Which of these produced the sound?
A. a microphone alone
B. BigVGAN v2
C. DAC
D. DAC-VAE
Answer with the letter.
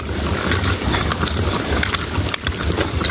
A